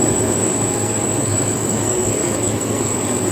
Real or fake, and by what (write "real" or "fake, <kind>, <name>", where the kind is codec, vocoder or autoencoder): fake, codec, SNAC